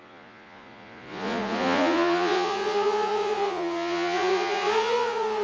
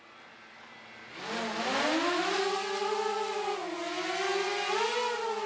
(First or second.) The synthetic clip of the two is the first